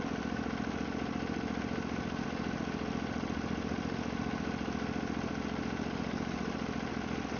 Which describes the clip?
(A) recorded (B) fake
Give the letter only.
A